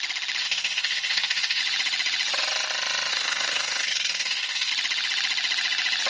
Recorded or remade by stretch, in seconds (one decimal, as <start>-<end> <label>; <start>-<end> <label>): 0.0-0.4 recorded; 0.4-1.6 remade; 1.6-3.1 recorded; 3.1-4.7 remade; 4.7-6.1 recorded